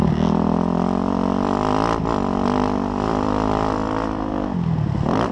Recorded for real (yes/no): yes